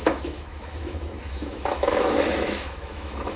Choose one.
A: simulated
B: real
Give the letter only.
A